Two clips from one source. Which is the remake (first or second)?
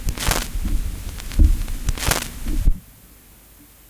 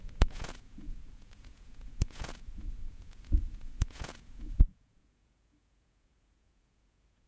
second